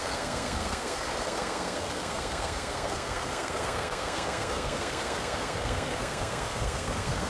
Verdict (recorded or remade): remade